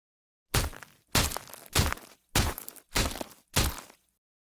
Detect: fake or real real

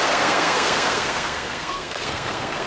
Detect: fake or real fake